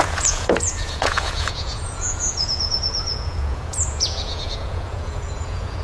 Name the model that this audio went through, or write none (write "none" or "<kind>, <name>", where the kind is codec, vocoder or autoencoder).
vocoder, Vocos